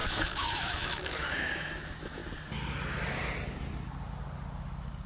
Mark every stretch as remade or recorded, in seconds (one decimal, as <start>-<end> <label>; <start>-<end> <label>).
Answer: 0.0-2.2 remade; 2.2-5.1 recorded